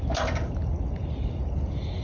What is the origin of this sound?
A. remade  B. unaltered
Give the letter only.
B